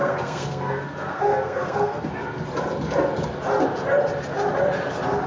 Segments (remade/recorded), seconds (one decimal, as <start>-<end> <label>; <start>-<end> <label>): 0.0-2.1 remade; 2.1-5.3 recorded